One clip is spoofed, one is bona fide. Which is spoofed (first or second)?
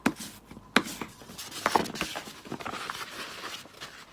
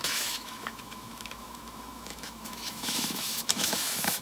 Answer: second